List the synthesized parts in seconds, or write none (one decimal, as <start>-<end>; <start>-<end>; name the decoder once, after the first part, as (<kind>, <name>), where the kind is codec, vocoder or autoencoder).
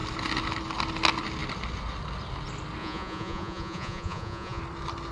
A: 2.8-4.6 (vocoder, Vocos)